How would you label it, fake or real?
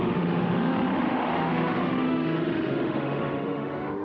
fake